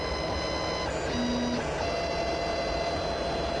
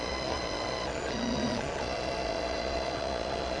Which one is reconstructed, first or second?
second